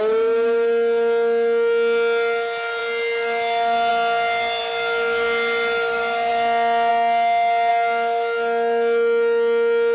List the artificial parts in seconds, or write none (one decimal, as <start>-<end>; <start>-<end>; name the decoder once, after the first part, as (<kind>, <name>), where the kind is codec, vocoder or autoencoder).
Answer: none